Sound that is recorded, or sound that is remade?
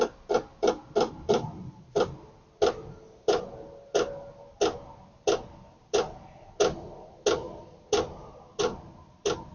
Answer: recorded